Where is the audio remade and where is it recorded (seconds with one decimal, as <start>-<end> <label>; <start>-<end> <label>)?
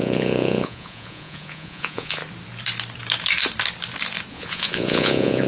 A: 0.0-2.2 remade; 2.2-4.3 recorded; 4.3-5.5 remade